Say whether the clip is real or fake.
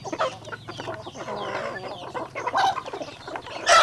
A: real